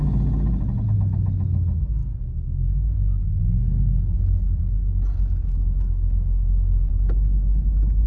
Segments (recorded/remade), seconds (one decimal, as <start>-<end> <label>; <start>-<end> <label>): 0.0-2.0 recorded; 2.0-6.9 remade; 6.9-8.1 recorded